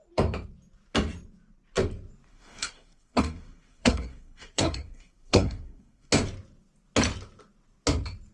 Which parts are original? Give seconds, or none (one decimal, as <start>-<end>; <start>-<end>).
0.0-2.3; 6.1-8.3